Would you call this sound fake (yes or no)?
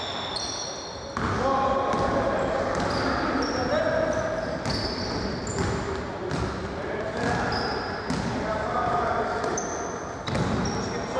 no